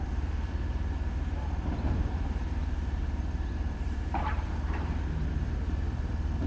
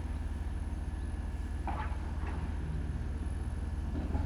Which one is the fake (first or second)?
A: first